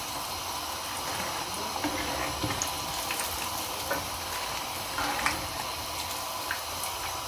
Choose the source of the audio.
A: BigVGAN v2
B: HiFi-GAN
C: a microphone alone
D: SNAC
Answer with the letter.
C